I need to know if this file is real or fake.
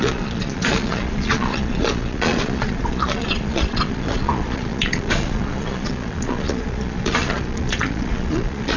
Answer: fake